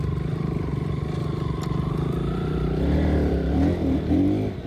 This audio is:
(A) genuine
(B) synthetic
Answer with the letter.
A